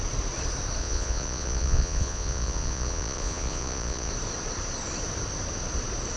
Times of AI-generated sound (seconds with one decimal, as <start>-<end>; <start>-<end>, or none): 0.8-4.1